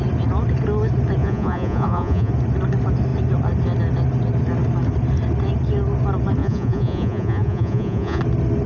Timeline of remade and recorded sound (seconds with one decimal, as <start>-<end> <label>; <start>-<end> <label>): 0.0-1.2 recorded; 1.2-2.3 remade; 2.3-6.4 recorded; 6.4-8.2 remade; 8.2-8.7 recorded